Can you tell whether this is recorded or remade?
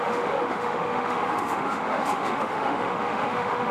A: remade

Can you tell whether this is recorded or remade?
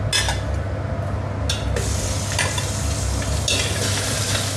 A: recorded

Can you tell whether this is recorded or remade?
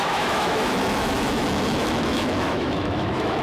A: remade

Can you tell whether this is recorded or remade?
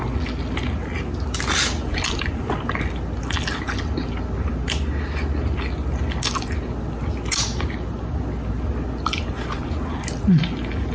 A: recorded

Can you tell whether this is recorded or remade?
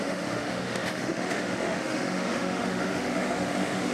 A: remade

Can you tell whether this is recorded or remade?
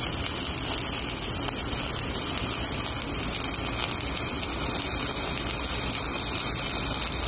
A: recorded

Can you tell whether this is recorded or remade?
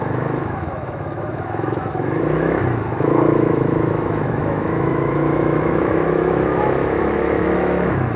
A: remade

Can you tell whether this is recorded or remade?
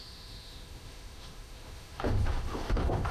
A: remade